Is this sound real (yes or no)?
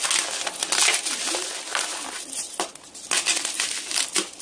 yes